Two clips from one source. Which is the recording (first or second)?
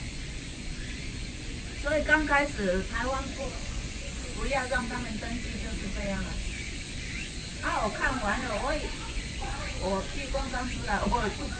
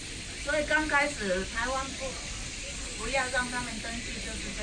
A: second